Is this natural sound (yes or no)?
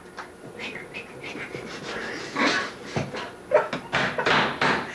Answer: yes